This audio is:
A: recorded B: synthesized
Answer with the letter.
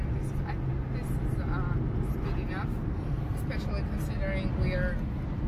A